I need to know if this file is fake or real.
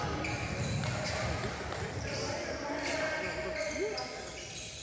real